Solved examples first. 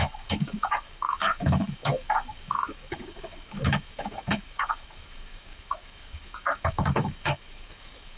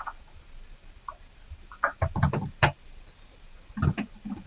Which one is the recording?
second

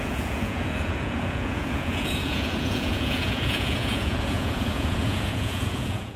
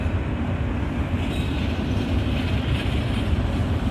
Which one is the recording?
second